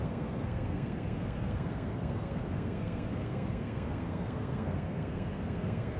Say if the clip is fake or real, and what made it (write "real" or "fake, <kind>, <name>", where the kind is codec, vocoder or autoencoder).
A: fake, codec, SNAC